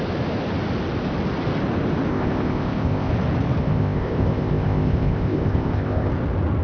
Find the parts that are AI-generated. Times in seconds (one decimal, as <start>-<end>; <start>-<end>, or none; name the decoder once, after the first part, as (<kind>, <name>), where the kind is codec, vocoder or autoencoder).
2.1-3.1 (codec, ZipCodec); 3.6-6.1